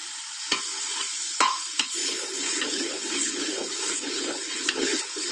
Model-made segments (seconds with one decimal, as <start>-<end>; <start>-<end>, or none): 0.6-5.3